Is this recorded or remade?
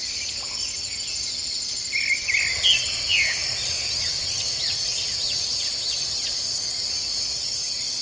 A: recorded